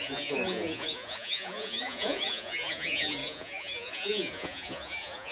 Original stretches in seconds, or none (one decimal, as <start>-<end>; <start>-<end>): none